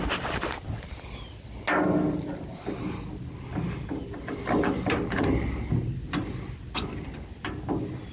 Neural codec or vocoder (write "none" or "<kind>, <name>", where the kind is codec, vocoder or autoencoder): none